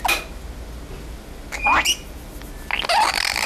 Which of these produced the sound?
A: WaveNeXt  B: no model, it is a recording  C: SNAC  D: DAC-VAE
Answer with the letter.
B